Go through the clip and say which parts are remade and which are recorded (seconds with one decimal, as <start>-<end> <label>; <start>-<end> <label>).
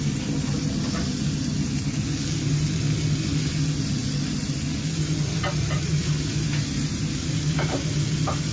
0.0-8.5 recorded